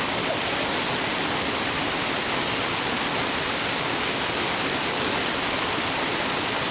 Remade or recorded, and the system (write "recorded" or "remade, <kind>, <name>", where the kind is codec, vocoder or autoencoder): recorded